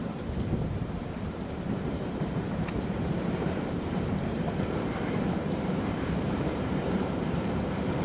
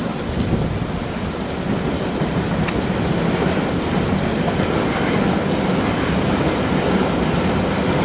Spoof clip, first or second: first